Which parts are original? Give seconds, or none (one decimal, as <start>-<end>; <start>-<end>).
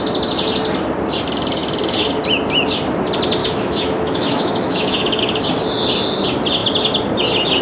0.0-3.4; 5.2-7.6